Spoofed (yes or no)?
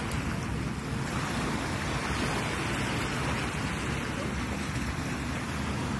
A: no